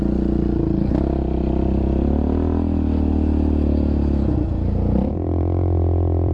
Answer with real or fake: real